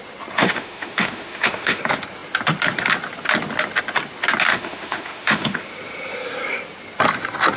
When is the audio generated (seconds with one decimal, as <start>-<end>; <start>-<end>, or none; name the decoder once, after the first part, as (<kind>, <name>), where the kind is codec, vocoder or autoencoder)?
0.4-1.8 (autoencoder, DAC-VAE); 4.5-5.6